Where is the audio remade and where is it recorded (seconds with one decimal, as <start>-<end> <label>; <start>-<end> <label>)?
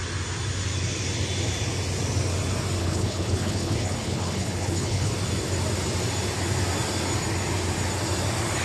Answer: 0.0-2.8 recorded; 2.8-5.1 remade; 5.1-8.6 recorded